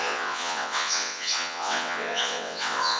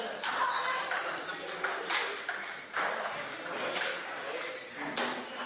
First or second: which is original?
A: second